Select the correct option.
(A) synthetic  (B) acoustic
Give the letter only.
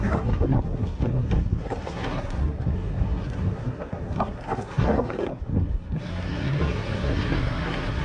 A